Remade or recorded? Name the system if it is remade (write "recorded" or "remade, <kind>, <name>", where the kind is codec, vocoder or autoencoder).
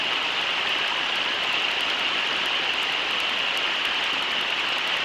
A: recorded